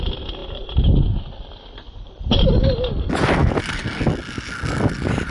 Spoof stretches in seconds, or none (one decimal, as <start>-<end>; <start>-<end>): none